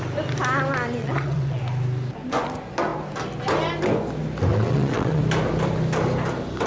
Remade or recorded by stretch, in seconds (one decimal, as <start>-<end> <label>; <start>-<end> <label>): 0.0-1.0 recorded; 1.0-1.6 remade; 1.6-4.5 recorded; 4.5-5.2 remade; 5.2-6.7 recorded